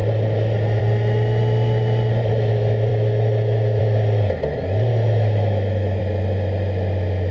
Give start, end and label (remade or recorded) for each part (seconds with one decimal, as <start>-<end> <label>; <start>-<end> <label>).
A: 0.0-2.9 recorded; 2.9-3.8 remade; 3.8-4.9 recorded; 4.9-6.0 remade; 6.0-7.3 recorded